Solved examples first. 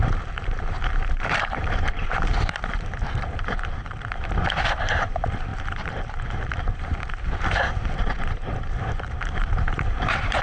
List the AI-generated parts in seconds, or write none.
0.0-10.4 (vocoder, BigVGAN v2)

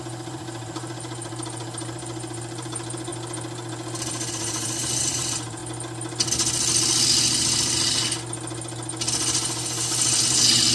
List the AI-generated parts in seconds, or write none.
0.0-3.1 (vocoder, BigVGAN v2); 4.3-5.6; 10.2-10.7